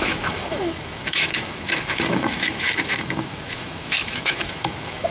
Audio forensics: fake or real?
fake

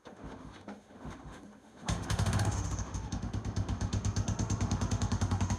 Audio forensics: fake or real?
fake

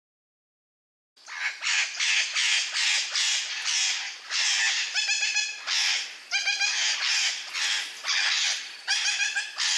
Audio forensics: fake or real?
real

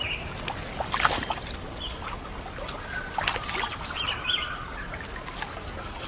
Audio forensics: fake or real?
real